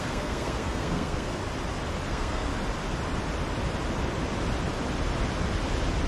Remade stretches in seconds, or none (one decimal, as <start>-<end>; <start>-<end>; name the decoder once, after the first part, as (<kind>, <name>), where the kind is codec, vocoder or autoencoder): 0.0-1.4 (codec, SNAC); 2.1-2.5